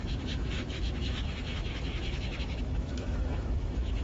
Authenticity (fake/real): fake